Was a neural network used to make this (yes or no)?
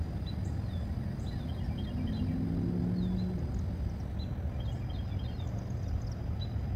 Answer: no